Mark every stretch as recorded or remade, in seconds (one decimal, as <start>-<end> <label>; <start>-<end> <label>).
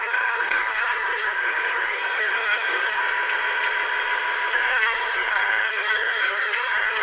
0.0-3.0 remade; 3.0-4.5 recorded; 4.5-7.0 remade